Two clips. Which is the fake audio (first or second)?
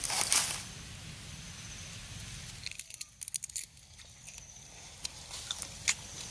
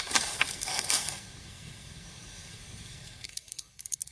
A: second